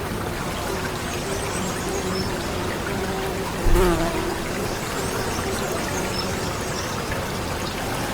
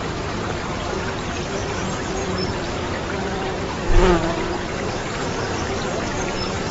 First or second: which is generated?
second